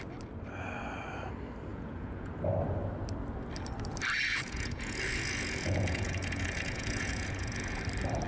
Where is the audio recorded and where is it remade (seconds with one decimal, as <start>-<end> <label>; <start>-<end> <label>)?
0.0-1.7 recorded; 1.7-2.3 remade; 2.3-4.3 recorded; 4.3-7.8 remade; 7.8-8.3 recorded